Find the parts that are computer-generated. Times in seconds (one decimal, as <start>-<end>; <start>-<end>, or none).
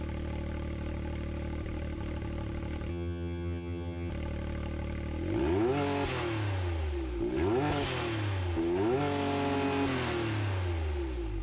2.9-4.1